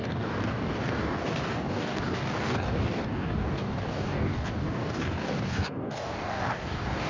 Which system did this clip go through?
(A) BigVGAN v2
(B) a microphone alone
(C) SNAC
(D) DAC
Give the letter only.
D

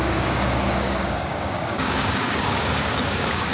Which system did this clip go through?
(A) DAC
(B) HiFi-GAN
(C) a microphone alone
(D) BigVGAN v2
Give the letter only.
A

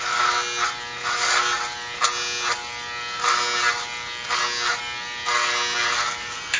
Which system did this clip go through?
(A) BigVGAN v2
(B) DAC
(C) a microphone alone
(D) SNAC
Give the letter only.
C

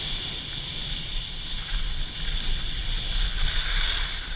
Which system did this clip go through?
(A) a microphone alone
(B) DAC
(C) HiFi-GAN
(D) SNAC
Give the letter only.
A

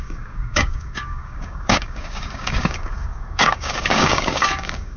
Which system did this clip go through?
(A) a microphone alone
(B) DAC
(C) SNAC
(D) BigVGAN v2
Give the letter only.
B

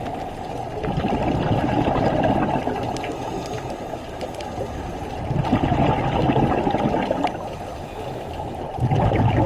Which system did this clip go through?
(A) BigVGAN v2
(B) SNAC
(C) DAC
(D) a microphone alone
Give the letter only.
D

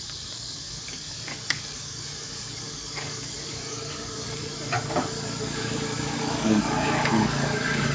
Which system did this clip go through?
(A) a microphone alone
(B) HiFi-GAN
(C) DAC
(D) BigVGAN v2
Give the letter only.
C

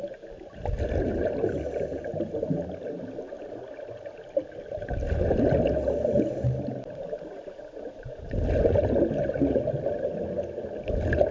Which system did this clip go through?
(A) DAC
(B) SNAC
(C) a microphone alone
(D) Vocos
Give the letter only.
C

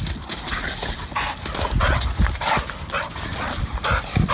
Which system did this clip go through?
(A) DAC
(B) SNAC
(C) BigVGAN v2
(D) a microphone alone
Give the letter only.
D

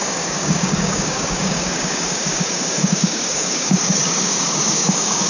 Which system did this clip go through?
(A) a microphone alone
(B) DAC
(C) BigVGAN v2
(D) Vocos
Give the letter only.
B